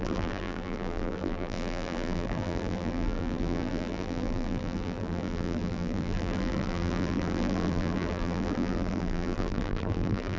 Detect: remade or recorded remade